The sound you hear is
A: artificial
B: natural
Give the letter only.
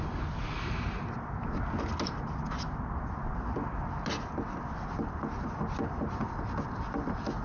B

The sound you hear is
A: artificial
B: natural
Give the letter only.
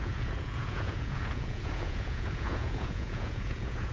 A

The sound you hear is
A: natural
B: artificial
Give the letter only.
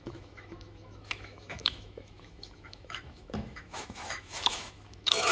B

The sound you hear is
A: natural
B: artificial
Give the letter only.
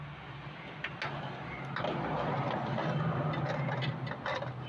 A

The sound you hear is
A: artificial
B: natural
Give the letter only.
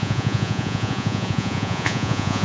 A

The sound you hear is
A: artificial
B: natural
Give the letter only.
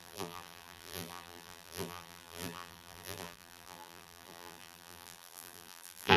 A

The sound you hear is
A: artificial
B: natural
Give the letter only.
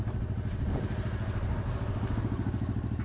B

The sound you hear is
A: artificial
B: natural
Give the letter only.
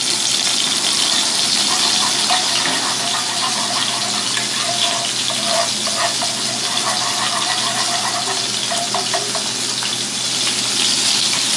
B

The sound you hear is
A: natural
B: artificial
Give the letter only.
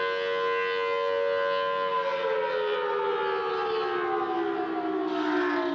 A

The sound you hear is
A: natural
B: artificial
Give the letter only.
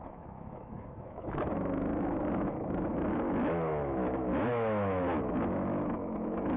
B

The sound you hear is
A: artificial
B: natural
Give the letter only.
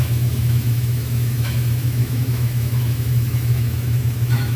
A